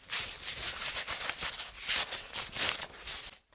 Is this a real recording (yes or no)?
yes